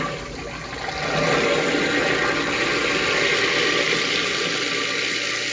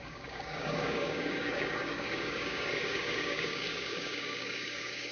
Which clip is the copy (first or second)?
second